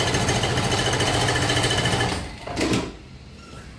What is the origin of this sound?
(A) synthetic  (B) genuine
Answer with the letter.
B